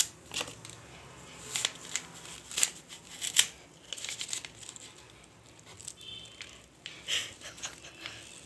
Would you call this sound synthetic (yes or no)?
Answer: no